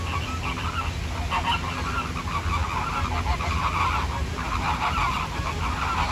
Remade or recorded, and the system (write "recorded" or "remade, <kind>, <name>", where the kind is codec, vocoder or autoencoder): recorded